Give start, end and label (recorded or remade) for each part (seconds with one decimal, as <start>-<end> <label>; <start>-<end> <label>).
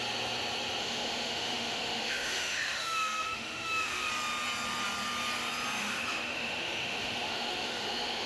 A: 0.0-0.8 recorded; 0.8-4.1 remade; 4.1-5.8 recorded; 5.8-8.3 remade